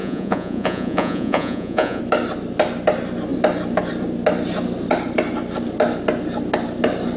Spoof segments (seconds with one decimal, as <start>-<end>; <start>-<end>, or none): 0.0-2.0